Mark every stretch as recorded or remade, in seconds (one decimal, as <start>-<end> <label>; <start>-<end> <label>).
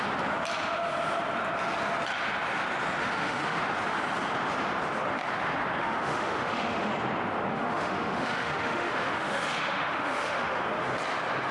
0.0-3.0 recorded; 3.0-3.6 remade; 3.6-5.8 recorded; 5.8-6.9 remade; 6.9-7.5 recorded; 7.5-10.6 remade; 10.6-11.5 recorded